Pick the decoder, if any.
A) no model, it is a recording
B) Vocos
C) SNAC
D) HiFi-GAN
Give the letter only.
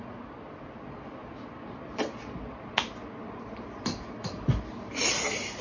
A